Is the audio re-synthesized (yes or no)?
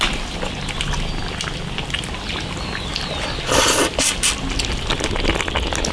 no